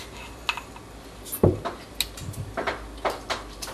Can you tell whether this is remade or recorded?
recorded